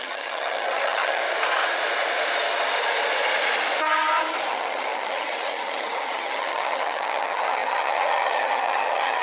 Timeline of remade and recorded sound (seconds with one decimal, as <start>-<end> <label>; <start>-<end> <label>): 0.0-1.2 remade; 1.2-4.5 recorded; 4.5-9.2 remade